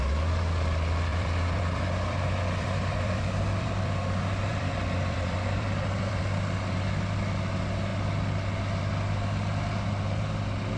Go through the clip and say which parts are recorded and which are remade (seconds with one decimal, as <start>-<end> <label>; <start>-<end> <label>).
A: 0.0-1.1 recorded; 1.1-4.0 remade; 4.0-4.5 recorded; 4.5-6.2 remade; 6.2-10.8 recorded